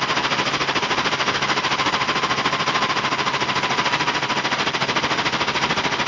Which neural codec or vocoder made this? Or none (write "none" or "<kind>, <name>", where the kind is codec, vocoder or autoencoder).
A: none